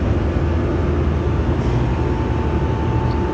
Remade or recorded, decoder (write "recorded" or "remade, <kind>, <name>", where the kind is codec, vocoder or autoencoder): recorded